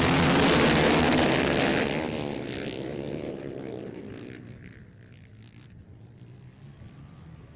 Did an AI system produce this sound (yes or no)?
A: no